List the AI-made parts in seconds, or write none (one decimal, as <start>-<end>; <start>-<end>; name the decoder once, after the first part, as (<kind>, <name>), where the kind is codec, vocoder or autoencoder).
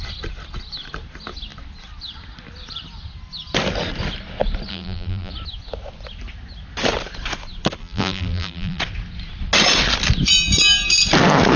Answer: 4.7-5.3 (vocoder, BigVGAN v2); 7.8-8.8